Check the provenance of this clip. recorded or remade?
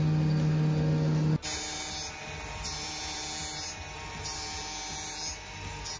recorded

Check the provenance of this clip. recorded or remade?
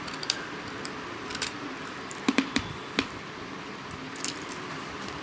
remade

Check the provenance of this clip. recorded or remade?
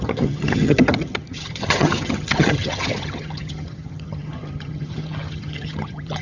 remade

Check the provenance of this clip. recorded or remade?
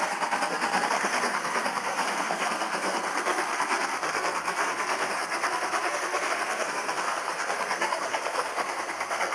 remade